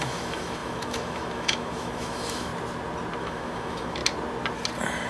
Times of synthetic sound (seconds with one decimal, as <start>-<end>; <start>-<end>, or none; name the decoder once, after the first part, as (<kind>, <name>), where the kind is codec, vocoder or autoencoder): 0.0-2.5 (autoencoder, DAC-VAE); 3.2-4.0